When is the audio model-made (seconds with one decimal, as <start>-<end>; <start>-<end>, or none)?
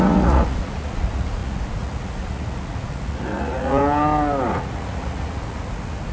0.0-3.8; 4.5-6.1